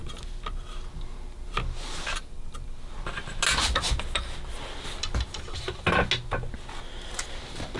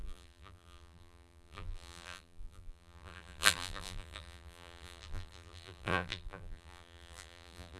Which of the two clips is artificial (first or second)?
second